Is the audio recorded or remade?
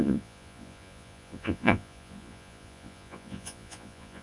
remade